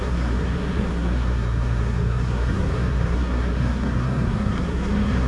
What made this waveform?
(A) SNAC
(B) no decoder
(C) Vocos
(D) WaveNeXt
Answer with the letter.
A